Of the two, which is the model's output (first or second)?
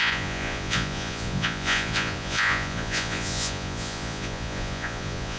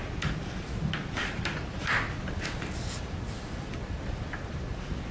first